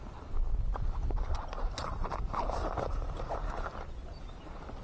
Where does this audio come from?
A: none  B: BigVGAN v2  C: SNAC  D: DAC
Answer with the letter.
A